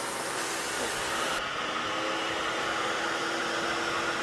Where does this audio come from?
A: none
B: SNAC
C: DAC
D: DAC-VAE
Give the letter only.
A